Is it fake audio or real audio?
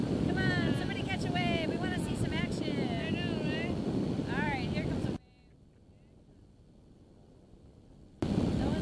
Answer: real